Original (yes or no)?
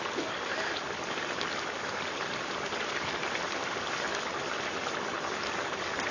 no